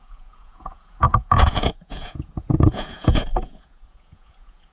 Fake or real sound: fake